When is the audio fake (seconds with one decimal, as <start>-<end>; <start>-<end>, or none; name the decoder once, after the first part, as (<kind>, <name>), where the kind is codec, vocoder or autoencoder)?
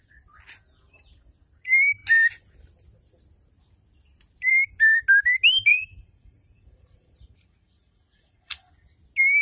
5.7-8.7 (vocoder, Vocos)